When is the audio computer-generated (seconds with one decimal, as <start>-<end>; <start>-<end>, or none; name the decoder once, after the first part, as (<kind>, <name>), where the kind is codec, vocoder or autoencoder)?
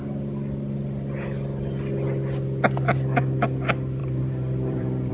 4.0-5.1 (vocoder, BigVGAN v2)